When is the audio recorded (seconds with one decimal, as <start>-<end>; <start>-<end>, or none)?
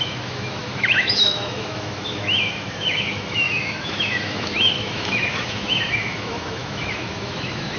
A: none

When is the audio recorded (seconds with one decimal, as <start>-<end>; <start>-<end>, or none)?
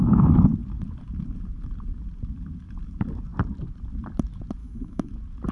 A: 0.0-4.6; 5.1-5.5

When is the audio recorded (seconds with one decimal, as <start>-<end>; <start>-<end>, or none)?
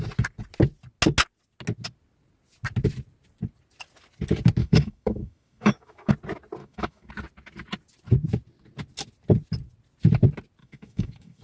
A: 0.0-4.6; 6.1-6.6; 7.1-10.6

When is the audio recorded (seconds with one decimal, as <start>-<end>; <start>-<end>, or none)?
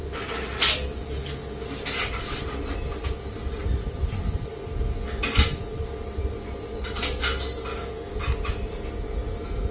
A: 0.0-7.7; 8.2-9.7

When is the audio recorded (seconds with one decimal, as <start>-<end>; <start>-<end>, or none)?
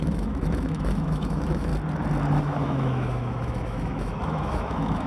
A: 1.7-2.4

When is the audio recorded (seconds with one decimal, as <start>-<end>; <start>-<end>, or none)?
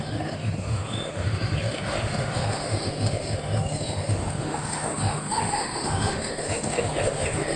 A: none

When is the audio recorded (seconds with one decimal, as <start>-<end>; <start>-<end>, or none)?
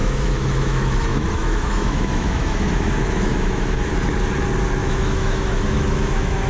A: 3.9-4.8